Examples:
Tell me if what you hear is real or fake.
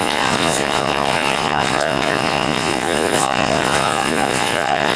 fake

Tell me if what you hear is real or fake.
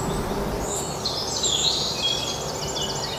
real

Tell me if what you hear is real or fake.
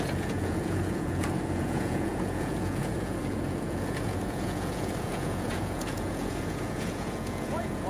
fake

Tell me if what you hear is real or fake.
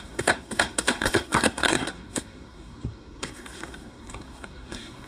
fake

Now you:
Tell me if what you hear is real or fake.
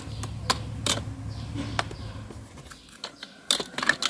real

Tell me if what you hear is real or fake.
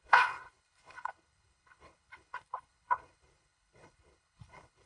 fake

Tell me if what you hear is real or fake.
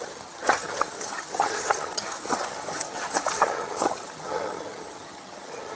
fake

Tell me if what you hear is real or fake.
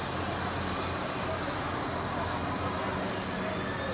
real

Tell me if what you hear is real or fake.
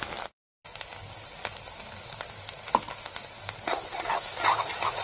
real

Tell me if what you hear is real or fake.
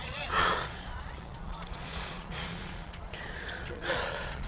fake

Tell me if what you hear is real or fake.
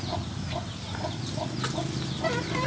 real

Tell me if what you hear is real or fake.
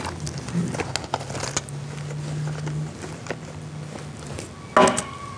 real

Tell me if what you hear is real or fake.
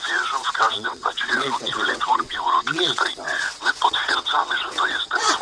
fake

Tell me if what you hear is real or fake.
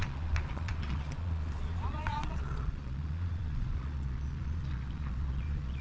fake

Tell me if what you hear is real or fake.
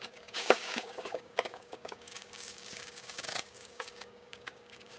fake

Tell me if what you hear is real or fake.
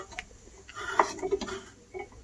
real